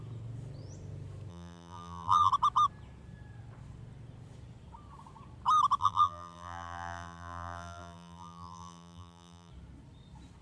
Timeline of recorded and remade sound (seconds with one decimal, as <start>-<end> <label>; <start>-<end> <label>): 0.0-1.3 recorded; 1.3-2.3 remade; 2.3-5.8 recorded; 5.8-9.5 remade; 9.5-10.4 recorded